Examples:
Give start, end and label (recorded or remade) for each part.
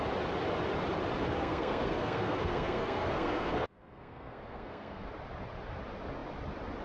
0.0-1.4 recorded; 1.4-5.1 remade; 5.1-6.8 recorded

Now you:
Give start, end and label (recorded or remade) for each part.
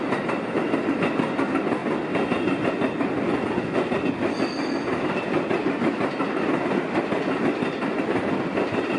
0.0-9.0 recorded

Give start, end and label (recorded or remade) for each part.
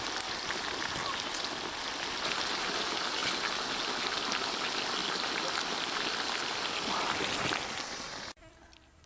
0.0-9.1 recorded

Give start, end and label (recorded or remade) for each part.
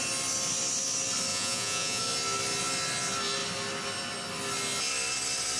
0.0-1.3 recorded; 1.3-2.0 remade; 2.0-5.6 recorded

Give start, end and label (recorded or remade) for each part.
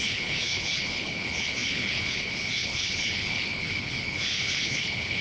0.0-5.2 remade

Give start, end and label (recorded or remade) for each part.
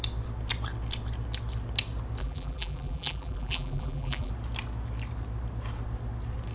0.0-2.2 recorded; 2.2-4.3 remade; 4.3-6.5 recorded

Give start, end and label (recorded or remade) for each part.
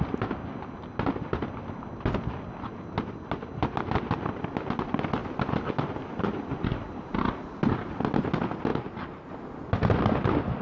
0.0-10.6 recorded